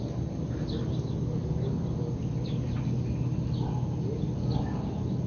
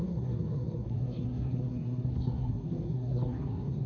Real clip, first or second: first